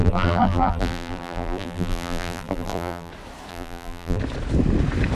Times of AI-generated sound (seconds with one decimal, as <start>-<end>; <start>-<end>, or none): 0.0-3.1; 3.5-4.2